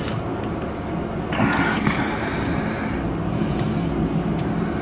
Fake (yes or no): no